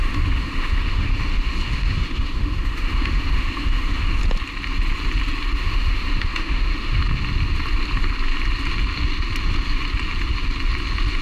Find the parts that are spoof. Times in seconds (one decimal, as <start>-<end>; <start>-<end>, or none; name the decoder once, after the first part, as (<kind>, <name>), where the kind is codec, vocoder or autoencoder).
0.0-4.2 (autoencoder, DAC-VAE); 5.6-7.0